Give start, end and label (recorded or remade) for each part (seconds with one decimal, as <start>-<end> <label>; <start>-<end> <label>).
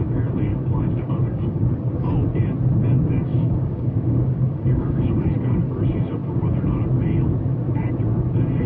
0.0-0.5 recorded; 0.5-1.6 remade; 1.6-3.3 recorded; 3.3-5.3 remade; 5.3-8.7 recorded